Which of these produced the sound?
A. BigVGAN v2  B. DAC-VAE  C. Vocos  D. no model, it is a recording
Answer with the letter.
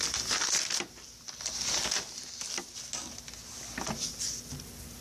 D